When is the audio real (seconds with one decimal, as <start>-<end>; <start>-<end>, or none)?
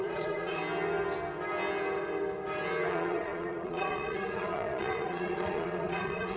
0.6-2.9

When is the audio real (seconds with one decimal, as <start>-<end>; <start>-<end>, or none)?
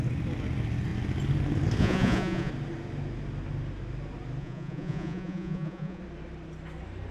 0.0-1.8; 2.5-4.4; 6.0-7.1